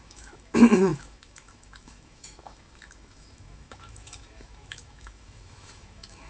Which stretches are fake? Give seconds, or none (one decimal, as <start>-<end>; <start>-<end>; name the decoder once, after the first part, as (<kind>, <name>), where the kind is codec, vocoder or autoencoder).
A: 0.0-6.3 (autoencoder, DAC-VAE)